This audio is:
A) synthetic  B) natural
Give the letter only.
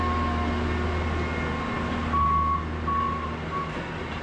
B